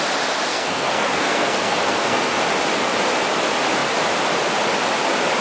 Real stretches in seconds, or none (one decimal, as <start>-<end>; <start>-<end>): 0.0-0.5; 2.4-5.4